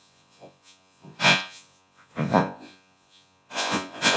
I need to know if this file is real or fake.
fake